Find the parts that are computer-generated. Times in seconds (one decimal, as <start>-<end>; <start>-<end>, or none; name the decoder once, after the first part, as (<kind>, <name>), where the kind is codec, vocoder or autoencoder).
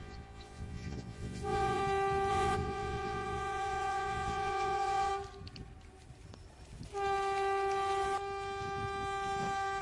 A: 0.0-1.8 (vocoder, Vocos); 2.3-5.1